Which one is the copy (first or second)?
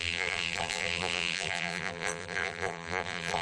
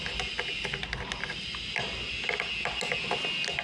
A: first